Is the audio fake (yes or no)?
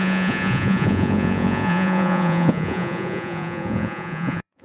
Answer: yes